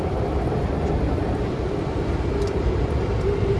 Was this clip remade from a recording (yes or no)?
yes